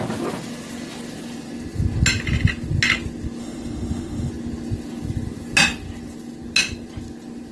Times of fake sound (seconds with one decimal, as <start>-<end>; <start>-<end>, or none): 3.4-4.3